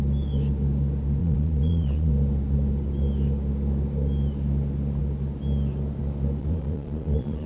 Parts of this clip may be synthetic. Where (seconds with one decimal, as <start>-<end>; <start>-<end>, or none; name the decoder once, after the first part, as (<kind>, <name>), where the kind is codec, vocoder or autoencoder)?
1.2-2.1 (vocoder, Vocos); 6.4-7.5

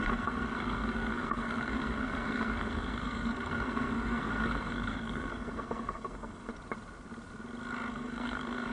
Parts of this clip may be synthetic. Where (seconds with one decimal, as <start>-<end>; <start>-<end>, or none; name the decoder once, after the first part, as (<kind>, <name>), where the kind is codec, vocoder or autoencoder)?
0.0-6.5 (codec, SNAC); 7.9-8.7